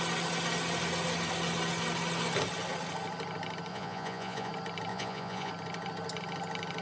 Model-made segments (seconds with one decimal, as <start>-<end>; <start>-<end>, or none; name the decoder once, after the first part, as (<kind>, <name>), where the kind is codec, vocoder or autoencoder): 3.7-4.5 (vocoder, Vocos); 4.9-5.5